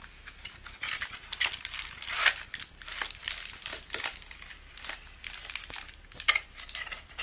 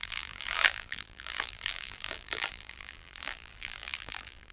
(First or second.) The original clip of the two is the first